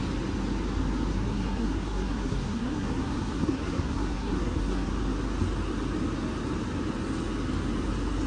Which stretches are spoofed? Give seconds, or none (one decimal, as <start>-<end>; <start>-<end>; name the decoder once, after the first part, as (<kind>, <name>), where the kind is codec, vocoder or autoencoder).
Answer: 1.1-4.9 (codec, SNAC)